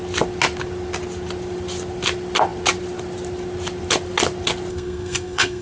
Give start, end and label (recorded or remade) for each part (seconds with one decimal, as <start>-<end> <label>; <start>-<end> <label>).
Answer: 0.0-4.7 recorded; 4.7-5.6 remade

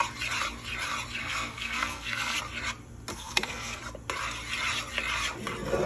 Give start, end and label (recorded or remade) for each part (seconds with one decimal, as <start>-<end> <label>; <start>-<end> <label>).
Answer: 0.0-1.2 recorded; 1.2-2.4 remade; 2.4-3.1 recorded; 3.1-3.8 remade; 3.8-5.9 recorded